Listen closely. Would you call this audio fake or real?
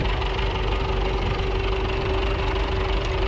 real